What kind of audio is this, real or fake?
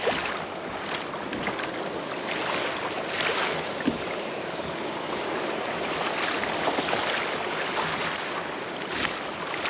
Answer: real